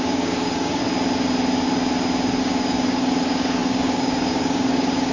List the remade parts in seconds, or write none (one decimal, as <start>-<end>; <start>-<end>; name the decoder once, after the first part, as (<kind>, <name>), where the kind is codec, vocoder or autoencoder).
0.0-0.8 (codec, DAC); 2.4-5.1